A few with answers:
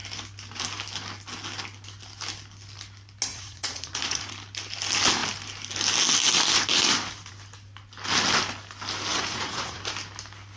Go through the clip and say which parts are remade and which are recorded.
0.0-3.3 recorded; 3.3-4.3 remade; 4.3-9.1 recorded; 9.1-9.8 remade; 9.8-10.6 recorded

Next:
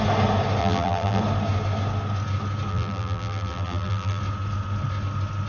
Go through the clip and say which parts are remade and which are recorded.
0.0-0.6 recorded; 0.6-1.2 remade; 1.2-2.7 recorded; 2.7-4.2 remade; 4.2-5.5 recorded

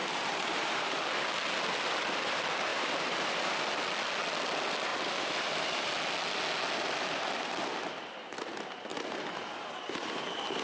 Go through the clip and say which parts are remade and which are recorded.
0.0-1.0 remade; 1.0-2.7 recorded; 2.7-3.7 remade; 3.7-4.9 recorded; 4.9-5.9 remade; 5.9-10.6 recorded

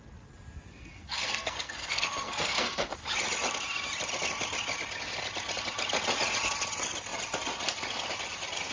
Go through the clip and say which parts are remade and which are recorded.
0.0-0.8 recorded; 0.8-2.9 remade; 2.9-8.7 recorded